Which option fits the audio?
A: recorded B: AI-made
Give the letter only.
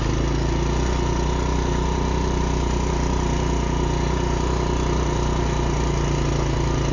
A